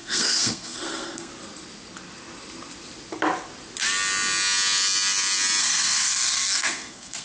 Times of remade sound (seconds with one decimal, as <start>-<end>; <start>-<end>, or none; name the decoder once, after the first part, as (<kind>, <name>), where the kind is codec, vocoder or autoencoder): 0.0-1.3 (codec, SNAC); 5.6-7.2

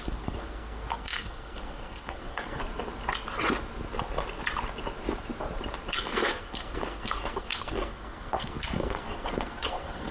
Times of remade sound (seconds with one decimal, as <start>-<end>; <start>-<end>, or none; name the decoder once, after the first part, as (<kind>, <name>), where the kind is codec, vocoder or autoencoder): 0.0-2.6 (codec, SNAC); 5.9-10.1

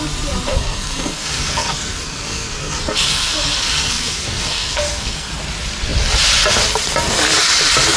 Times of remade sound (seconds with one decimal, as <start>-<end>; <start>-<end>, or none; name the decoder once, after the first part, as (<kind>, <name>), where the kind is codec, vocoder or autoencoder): 0.5-5.3 (codec, SNAC)

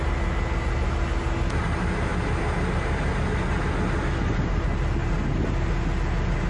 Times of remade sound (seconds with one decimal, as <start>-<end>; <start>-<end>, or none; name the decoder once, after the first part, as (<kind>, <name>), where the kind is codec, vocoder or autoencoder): none

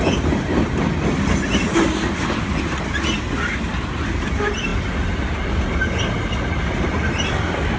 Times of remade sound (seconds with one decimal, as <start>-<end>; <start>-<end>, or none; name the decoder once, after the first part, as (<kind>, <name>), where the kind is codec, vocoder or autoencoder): none